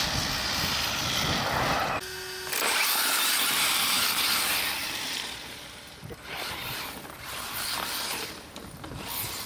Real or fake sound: real